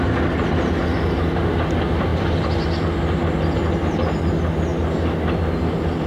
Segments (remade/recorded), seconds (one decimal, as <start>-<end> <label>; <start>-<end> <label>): 0.0-6.1 recorded